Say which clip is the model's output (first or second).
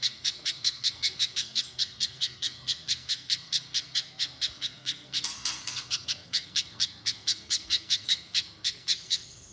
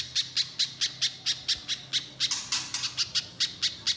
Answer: first